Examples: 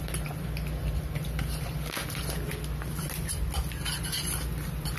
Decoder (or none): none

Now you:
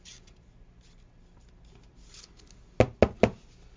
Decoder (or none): none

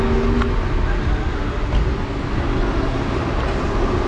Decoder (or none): none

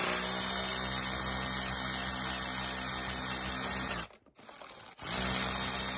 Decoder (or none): none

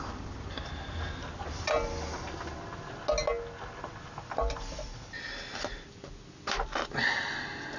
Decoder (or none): none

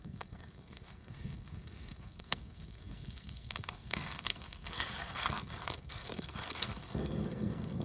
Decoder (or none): codec, SNAC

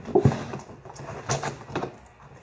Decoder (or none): none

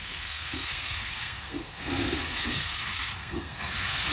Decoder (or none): codec, SNAC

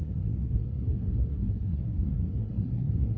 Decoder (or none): codec, SNAC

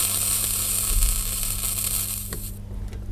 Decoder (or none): none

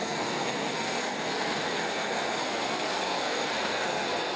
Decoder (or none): codec, SNAC